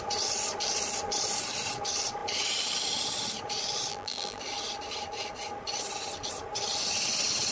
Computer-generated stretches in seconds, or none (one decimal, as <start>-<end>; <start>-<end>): 3.9-4.4